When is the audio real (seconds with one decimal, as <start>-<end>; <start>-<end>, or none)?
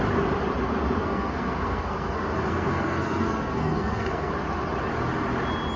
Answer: 0.0-1.0; 4.3-5.8